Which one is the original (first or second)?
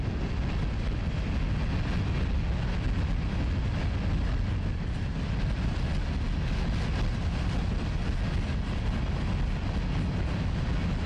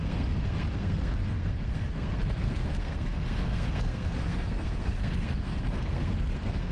first